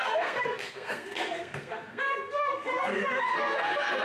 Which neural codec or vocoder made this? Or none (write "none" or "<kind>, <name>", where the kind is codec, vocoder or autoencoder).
codec, SNAC